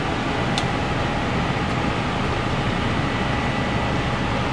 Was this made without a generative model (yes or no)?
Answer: yes